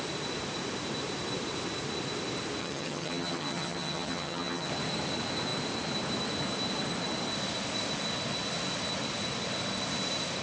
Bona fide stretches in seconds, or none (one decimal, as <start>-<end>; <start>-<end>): 0.0-2.6; 4.7-10.4